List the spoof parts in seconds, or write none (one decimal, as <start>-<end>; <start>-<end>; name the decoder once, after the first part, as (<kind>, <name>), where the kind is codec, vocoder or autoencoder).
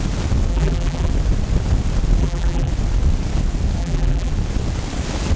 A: 0.5-1.1 (vocoder, BigVGAN v2); 2.2-2.7; 3.8-4.3